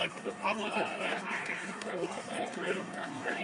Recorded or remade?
remade